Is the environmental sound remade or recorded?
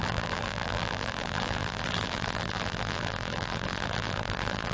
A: remade